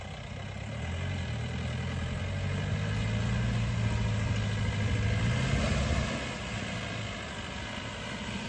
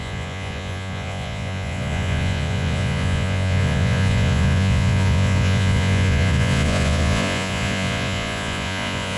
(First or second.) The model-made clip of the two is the second